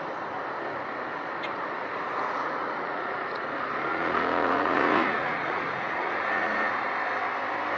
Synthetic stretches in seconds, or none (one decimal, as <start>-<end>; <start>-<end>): 1.8-3.5; 3.9-6.9